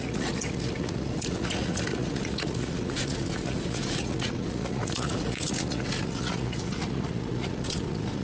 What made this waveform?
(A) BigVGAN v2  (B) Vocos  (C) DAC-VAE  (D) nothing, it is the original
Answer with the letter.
B